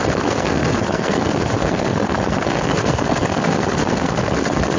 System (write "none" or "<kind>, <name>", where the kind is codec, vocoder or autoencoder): codec, SNAC